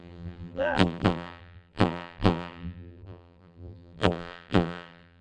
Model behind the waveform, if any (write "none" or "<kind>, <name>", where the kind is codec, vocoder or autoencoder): vocoder, BigVGAN v2